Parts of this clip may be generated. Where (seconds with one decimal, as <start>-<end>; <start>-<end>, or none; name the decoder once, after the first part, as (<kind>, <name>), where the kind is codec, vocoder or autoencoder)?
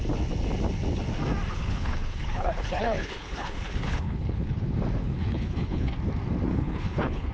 1.5-4.6 (codec, HILCodec); 5.0-5.9; 6.5-7.3